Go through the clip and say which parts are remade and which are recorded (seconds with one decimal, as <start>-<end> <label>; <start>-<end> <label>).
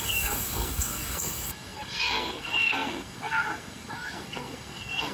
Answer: 0.0-5.1 remade